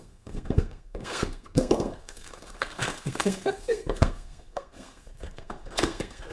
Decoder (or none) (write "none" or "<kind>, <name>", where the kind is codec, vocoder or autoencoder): codec, SNAC